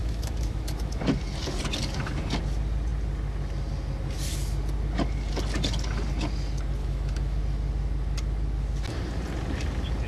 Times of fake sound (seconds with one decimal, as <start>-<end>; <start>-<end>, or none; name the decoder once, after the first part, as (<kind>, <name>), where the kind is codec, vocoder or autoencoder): 0.0-1.0 (autoencoder, DAC-VAE); 6.8-7.4